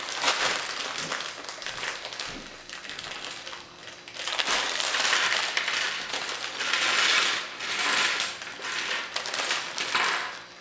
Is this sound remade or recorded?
recorded